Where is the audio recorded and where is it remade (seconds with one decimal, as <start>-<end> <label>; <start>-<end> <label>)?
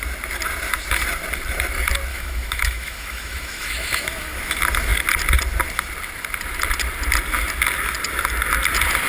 0.0-2.1 recorded; 2.1-4.4 remade; 4.4-9.1 recorded